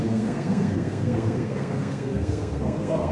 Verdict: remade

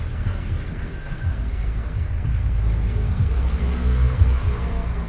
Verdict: remade